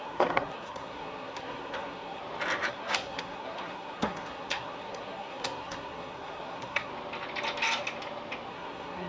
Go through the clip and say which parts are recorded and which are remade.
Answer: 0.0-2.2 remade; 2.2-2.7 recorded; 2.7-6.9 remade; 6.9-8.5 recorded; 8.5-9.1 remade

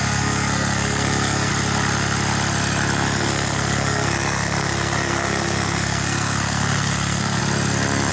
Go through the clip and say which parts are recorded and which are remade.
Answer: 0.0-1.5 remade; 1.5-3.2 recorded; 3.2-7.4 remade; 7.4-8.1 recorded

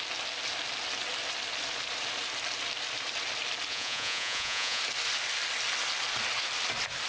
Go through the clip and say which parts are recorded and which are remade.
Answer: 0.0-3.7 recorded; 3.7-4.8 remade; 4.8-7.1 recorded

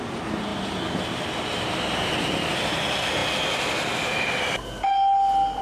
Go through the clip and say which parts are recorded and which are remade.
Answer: 0.0-5.6 recorded